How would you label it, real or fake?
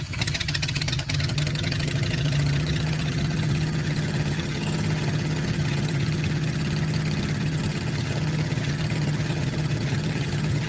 fake